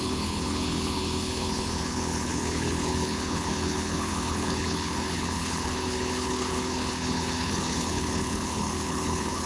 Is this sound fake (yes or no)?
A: yes